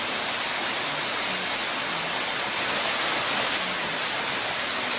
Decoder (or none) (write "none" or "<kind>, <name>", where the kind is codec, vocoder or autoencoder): none